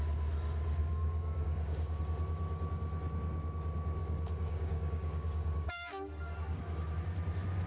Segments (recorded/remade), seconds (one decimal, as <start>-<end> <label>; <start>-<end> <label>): 0.0-0.8 recorded; 0.8-2.0 remade; 2.0-4.0 recorded; 4.0-6.6 remade; 6.6-7.7 recorded